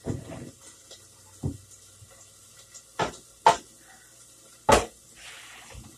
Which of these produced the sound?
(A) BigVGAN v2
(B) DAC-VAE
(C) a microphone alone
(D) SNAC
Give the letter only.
C